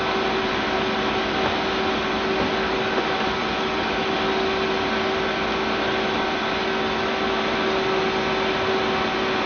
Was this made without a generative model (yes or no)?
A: yes